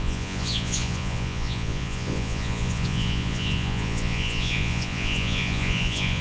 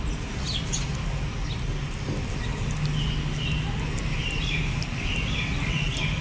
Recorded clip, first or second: second